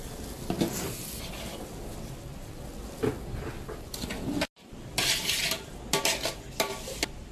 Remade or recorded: recorded